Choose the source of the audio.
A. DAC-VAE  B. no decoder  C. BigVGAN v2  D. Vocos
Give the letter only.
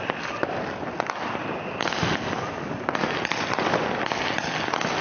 B